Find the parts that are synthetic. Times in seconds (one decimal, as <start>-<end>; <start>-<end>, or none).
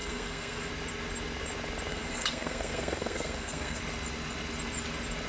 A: 0.0-0.7; 1.9-3.8